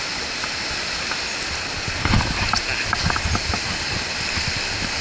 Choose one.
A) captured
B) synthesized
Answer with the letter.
A